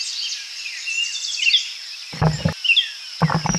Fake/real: real